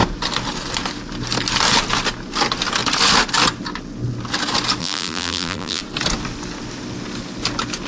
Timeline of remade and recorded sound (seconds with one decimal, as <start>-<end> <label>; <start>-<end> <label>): 0.0-4.8 recorded; 4.8-5.8 remade; 5.8-7.9 recorded